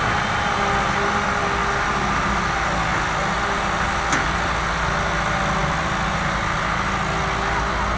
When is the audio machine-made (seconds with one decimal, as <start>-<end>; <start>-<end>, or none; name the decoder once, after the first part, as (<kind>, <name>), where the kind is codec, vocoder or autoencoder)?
none